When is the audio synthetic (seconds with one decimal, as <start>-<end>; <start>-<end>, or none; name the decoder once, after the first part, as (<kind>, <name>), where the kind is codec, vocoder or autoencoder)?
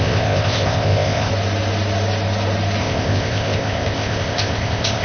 0.0-1.3 (codec, ZipCodec); 2.8-5.0